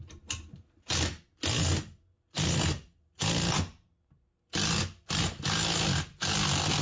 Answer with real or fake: real